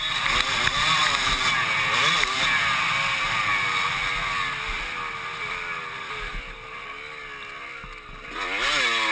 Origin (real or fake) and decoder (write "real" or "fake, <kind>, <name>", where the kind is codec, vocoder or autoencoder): real